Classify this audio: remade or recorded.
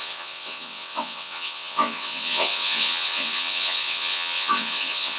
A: remade